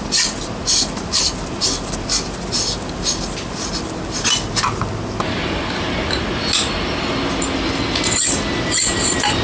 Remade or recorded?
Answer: recorded